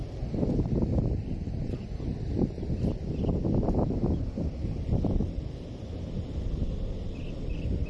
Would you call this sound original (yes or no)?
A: yes